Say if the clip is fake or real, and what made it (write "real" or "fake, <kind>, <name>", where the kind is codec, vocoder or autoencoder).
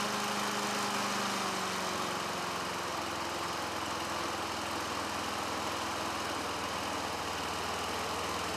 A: real